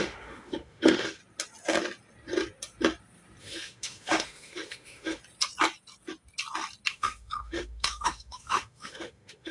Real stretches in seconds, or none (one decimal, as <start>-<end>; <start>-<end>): 1.2-3.4; 5.2-6.9